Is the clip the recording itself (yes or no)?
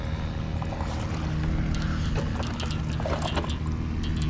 yes